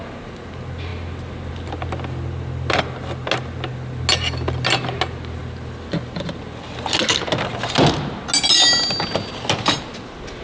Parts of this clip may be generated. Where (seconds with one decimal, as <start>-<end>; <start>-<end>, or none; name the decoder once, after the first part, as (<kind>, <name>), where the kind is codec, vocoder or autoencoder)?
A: none